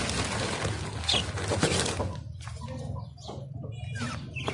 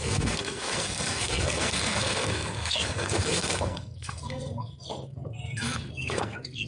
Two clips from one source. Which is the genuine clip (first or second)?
first